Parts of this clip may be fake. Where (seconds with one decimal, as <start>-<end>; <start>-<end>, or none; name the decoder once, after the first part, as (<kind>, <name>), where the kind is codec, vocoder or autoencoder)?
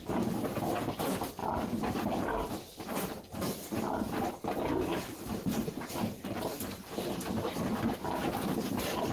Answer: none